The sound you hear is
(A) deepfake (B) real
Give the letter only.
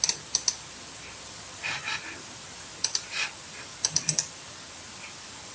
B